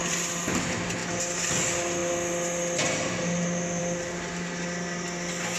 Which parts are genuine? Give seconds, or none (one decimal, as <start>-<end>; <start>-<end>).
0.0-5.6